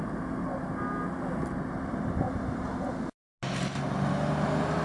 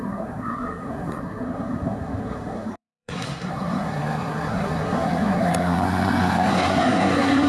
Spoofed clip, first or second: second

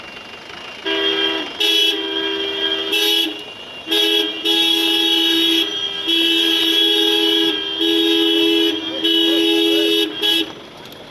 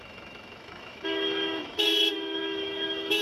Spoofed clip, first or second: second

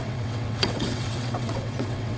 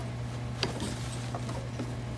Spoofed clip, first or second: first